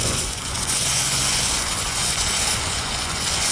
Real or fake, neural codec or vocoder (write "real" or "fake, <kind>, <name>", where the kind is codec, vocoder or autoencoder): fake, vocoder, Vocos